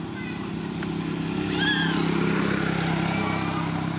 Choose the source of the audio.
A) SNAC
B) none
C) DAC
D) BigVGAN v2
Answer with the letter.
B